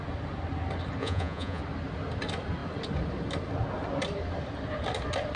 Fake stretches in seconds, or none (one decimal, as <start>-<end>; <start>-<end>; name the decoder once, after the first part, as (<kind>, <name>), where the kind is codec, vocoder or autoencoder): 1.0-1.6 (vocoder, Vocos)